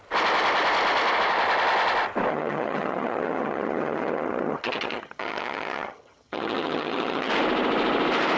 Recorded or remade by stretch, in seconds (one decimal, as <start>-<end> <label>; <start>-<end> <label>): 0.0-2.3 recorded; 2.3-7.3 remade; 7.3-8.4 recorded